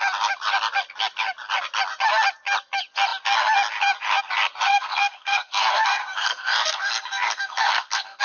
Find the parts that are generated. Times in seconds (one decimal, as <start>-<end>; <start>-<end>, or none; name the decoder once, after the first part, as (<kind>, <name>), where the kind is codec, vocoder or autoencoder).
4.7-8.2 (codec, SNAC)